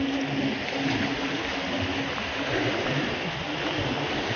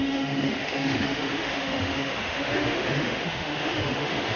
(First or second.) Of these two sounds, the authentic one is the first